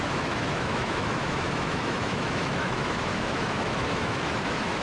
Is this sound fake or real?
fake